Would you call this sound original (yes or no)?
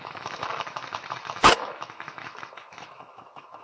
no